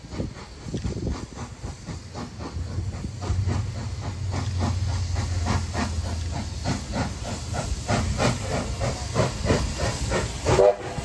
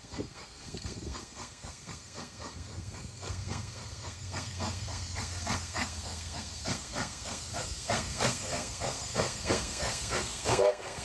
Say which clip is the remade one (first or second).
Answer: second